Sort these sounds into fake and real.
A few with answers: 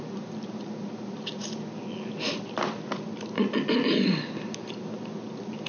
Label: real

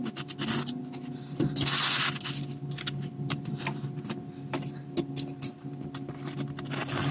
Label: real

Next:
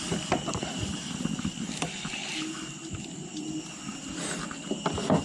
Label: real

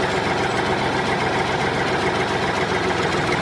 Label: real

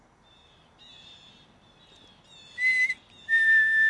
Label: real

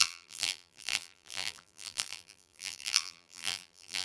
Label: fake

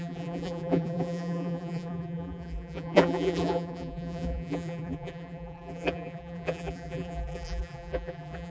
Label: fake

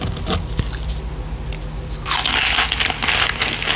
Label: real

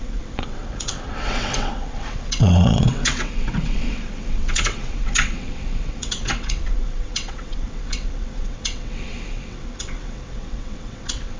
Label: fake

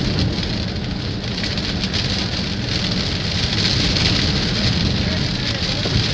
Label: real